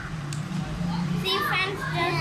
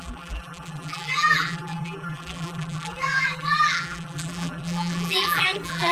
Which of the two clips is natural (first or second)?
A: first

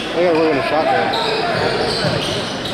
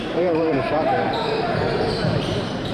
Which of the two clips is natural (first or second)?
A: first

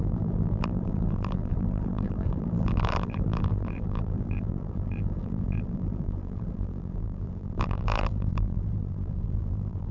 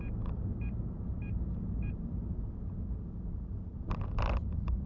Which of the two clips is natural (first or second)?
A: second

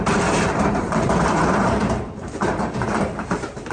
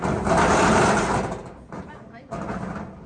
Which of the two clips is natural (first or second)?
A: second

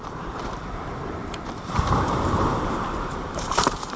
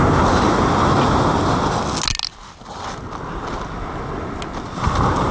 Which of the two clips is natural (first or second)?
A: second